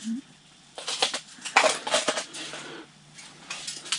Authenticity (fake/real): real